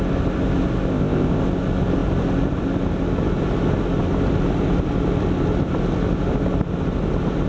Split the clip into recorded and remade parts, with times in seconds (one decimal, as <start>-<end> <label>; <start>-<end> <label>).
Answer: 0.0-0.9 recorded; 0.9-1.4 remade; 1.4-7.5 recorded